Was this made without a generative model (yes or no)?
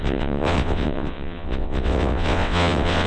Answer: no